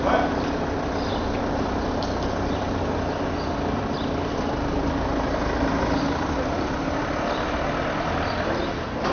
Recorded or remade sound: recorded